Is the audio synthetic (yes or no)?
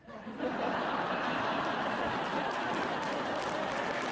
no